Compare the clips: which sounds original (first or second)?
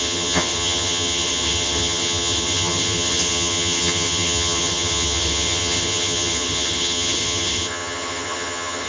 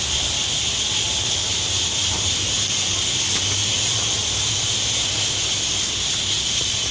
second